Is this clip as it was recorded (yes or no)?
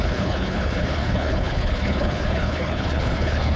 no